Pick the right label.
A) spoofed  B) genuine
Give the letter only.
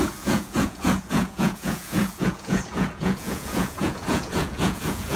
A